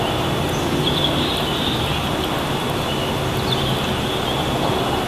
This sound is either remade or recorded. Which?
recorded